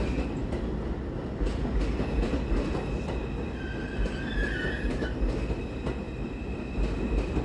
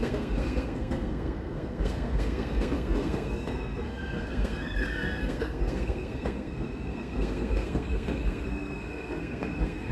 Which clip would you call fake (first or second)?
second